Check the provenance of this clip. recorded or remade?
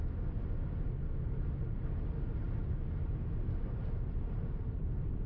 recorded